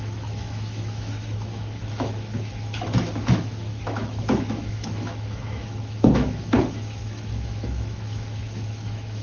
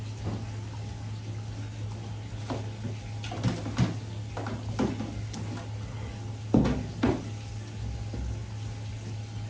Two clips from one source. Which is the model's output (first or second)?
first